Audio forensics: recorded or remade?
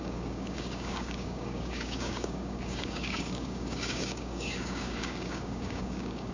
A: remade